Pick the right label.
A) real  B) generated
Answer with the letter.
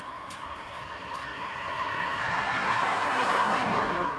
B